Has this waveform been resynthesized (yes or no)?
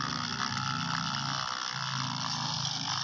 no